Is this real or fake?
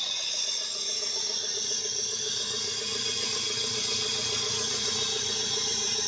fake